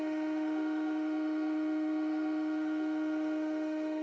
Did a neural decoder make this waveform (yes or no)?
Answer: yes